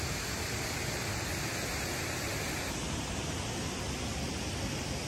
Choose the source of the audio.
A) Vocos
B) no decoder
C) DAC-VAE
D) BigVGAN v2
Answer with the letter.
B